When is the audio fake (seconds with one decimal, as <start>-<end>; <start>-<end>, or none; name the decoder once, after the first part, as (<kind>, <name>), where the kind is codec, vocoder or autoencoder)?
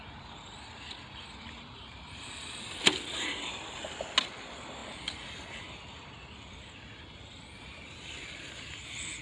none